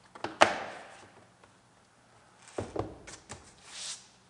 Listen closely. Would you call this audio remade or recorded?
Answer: recorded